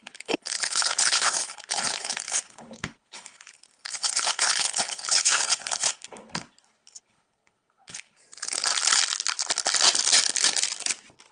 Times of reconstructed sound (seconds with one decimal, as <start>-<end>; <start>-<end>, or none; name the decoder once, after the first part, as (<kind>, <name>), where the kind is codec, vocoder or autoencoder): 0.0-8.2 (codec, HILCodec)